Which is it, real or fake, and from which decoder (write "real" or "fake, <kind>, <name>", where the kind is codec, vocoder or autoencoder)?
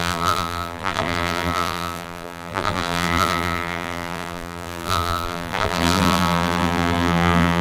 fake, vocoder, BigVGAN v2